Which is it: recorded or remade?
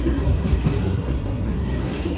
remade